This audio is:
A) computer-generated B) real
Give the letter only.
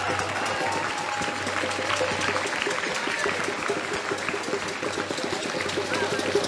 B